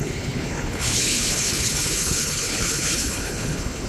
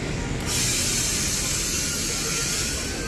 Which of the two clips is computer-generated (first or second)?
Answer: first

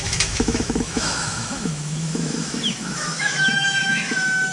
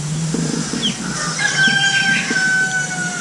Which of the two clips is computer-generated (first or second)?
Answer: first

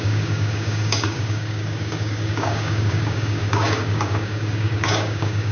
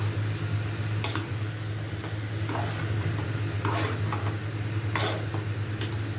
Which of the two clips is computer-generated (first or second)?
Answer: first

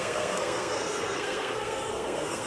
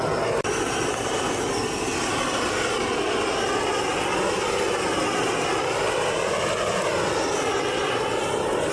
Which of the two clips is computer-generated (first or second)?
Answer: first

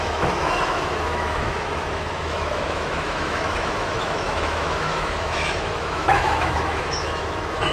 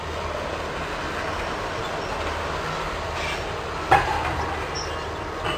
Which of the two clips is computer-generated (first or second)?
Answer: first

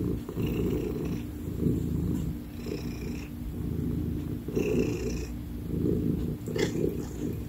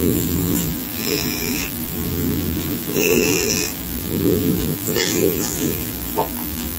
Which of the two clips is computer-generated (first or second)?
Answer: second